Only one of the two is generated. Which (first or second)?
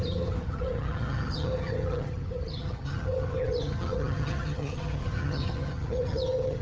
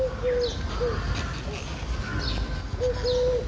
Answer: first